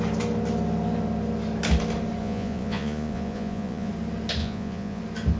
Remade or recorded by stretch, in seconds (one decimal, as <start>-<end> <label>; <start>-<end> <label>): 0.0-2.2 recorded; 2.2-3.9 remade; 3.9-4.4 recorded; 4.4-5.0 remade; 5.0-5.4 recorded